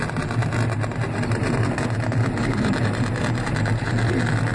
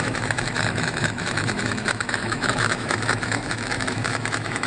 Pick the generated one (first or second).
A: second